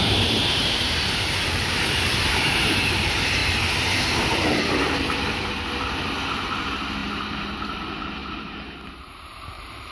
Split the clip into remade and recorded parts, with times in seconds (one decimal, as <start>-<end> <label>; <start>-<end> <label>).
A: 0.0-3.4 remade; 3.4-4.0 recorded; 4.0-9.9 remade